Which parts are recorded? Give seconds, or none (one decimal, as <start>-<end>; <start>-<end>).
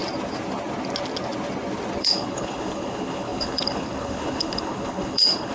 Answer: 0.0-2.0